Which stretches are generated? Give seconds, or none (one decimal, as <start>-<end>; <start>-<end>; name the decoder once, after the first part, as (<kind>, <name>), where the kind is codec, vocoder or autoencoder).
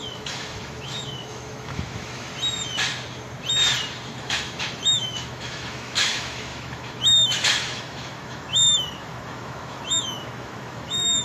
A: 0.0-2.3 (autoencoder, DAC-VAE); 4.2-11.2